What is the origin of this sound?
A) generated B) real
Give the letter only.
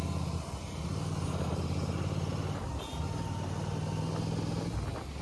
B